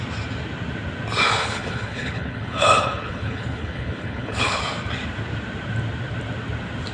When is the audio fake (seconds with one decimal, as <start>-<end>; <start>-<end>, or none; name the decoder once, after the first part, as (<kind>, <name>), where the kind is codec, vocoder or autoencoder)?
1.4-4.6 (codec, HILCodec)